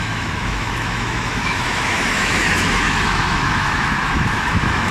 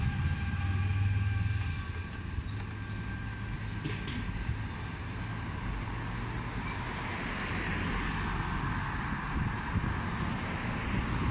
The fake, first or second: first